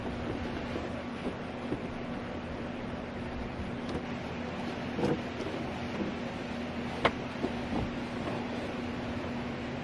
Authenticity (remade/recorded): recorded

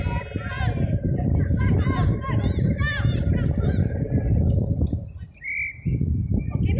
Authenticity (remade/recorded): remade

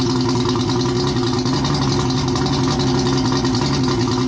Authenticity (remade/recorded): recorded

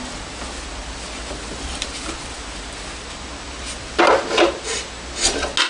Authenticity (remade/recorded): recorded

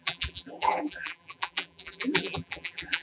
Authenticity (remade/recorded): remade